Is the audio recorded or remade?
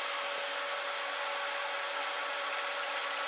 recorded